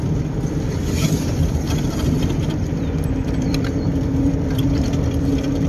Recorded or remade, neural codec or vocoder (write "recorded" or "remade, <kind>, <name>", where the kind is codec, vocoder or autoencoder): remade, vocoder, BigVGAN v2